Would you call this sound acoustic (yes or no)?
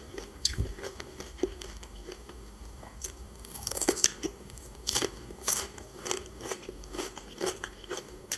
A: no